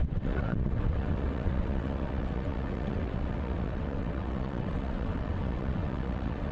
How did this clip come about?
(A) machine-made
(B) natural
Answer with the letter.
A